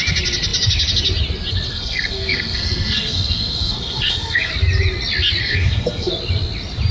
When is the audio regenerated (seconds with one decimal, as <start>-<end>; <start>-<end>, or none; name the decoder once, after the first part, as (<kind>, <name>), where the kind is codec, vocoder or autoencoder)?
1.7-4.5 (codec, SNAC); 5.4-6.1